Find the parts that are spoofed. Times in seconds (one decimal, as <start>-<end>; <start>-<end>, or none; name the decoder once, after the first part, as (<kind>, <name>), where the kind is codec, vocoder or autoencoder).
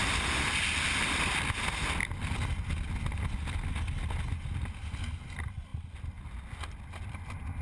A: none